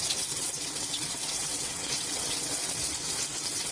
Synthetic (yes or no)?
yes